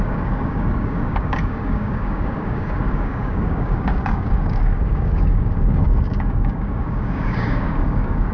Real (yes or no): no